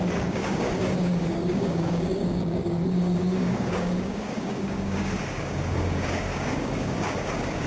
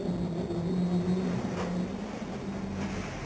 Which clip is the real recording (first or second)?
second